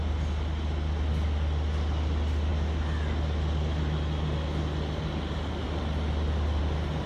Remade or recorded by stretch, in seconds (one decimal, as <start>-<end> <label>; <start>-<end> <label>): 0.0-7.1 recorded